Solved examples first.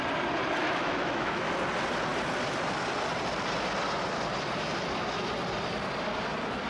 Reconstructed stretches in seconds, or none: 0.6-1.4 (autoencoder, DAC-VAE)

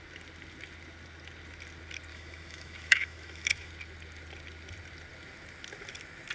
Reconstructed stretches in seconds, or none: 2.1-3.7 (autoencoder, DAC-VAE)

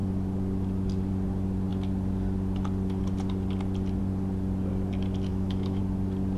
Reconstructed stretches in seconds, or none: 5.3-5.8 (autoencoder, DAC-VAE)

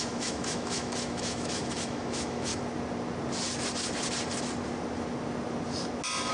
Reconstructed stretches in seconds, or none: 0.0-2.5 (autoencoder, DAC-VAE)

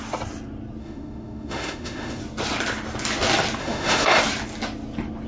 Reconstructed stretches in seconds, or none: 0.8-2.2 (autoencoder, DAC-VAE); 3.6-4.2